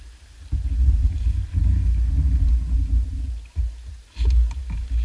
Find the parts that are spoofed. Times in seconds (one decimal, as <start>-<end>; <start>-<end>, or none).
0.0-0.6